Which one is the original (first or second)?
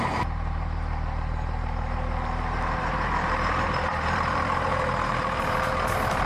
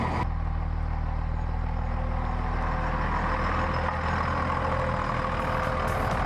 second